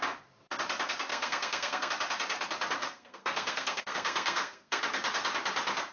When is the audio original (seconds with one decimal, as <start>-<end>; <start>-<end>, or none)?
0.0-1.1; 1.9-2.8; 4.8-5.9